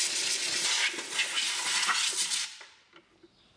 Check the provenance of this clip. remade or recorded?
recorded